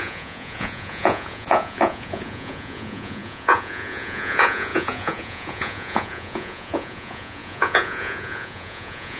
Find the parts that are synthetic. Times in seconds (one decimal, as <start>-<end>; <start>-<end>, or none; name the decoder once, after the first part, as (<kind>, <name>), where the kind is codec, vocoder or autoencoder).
0.0-9.2 (vocoder, Vocos)